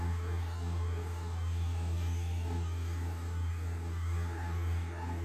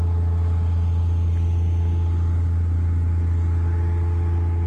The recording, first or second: second